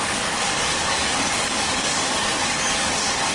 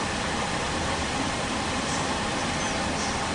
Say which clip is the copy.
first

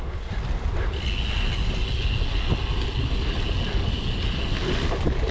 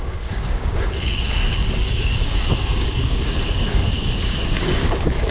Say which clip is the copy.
second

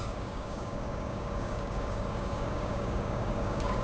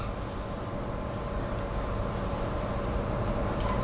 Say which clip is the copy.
first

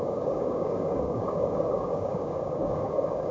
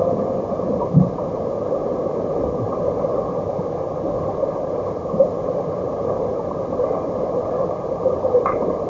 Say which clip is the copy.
first